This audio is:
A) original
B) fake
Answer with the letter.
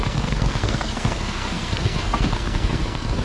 B